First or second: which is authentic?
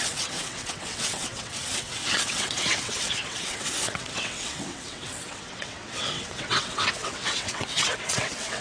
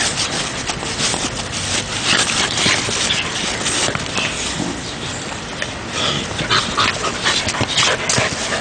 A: second